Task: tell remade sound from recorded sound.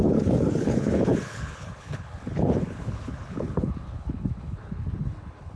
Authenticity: remade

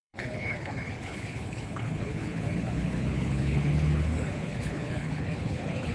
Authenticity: remade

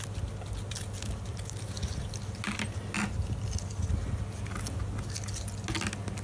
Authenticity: recorded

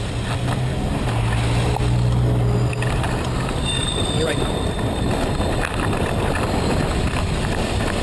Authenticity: recorded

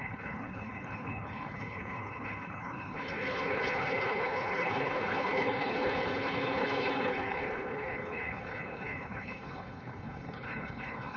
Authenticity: remade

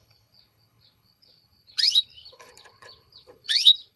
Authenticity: remade